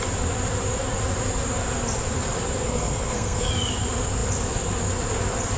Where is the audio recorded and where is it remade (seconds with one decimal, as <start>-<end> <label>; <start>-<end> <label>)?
0.0-2.6 recorded; 2.6-3.5 remade; 3.5-5.6 recorded